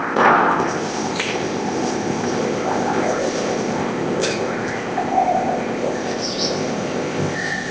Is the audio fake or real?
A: fake